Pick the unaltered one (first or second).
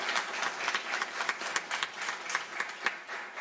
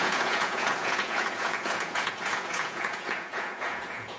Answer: first